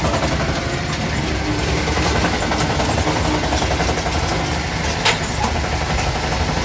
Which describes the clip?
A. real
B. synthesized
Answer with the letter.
A